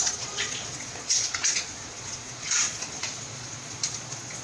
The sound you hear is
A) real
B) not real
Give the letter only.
B